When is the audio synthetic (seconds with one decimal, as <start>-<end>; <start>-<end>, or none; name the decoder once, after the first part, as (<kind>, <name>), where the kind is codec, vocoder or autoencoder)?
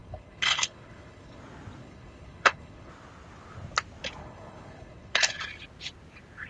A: 0.0-1.4 (codec, HILCodec); 1.8-2.9; 4.2-5.4